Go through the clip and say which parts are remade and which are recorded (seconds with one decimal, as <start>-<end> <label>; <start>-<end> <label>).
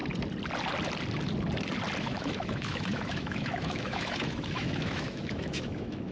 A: 0.0-2.0 recorded; 2.0-6.1 remade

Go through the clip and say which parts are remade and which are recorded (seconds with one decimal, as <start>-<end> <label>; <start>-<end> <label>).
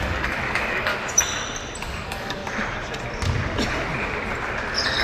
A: 0.0-0.9 remade; 0.9-1.8 recorded; 1.8-2.4 remade; 2.4-5.0 recorded